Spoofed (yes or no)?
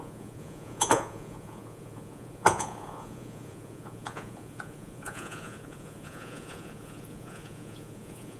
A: yes